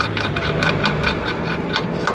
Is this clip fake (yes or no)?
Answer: no